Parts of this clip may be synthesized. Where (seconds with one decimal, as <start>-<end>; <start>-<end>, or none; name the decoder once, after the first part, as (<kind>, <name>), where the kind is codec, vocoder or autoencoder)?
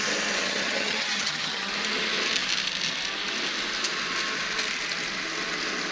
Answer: 0.4-1.7 (vocoder, HiFi-GAN)